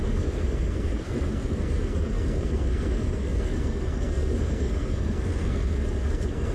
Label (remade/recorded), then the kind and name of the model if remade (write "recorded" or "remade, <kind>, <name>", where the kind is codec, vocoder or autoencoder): remade, codec, SNAC